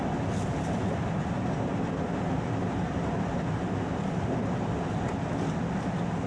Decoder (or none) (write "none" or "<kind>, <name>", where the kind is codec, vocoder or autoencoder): none